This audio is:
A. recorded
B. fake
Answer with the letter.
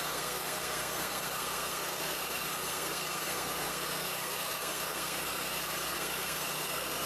B